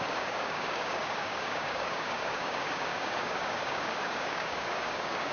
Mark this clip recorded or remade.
remade